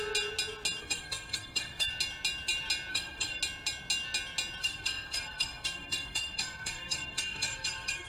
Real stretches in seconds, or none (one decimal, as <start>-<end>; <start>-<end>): 0.0-0.8; 1.9-2.9; 3.4-4.6